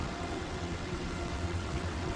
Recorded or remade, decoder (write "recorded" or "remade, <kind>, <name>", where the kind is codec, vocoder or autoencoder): remade, vocoder, WaveNeXt